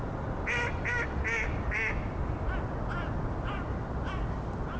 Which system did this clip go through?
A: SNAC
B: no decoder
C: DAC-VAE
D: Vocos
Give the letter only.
B